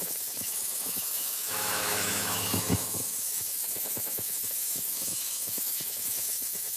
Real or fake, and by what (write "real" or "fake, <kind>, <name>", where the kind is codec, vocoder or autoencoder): fake, autoencoder, DAC-VAE